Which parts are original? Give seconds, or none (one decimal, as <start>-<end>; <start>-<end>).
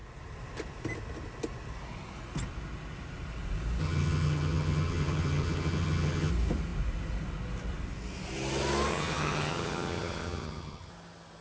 0.0-3.8; 6.3-8.9; 10.9-11.4